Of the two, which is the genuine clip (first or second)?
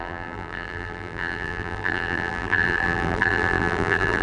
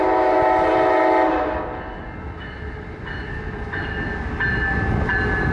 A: second